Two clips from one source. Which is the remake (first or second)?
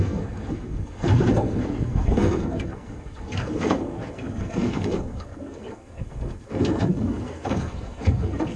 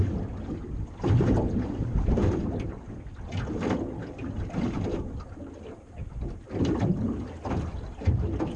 first